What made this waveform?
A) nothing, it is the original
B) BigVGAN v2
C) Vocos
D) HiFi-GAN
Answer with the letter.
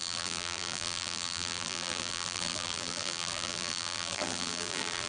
B